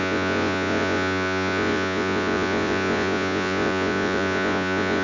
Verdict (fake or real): fake